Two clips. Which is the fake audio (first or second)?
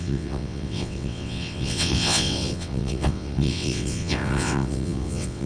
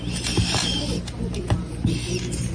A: first